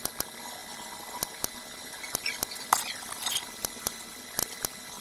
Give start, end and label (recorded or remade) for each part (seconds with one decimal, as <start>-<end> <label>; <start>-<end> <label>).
0.0-5.0 recorded